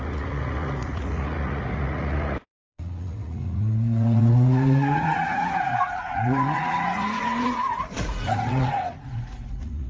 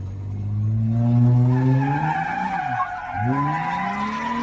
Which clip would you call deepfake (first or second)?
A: first